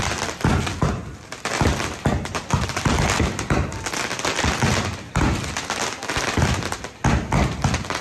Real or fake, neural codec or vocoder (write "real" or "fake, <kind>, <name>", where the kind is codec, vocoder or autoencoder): real